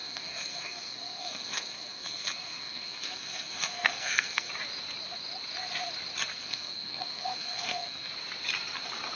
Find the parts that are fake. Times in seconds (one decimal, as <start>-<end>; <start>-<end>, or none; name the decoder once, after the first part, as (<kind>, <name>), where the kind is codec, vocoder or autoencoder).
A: 0.0-4.5 (codec, SNAC); 6.3-8.1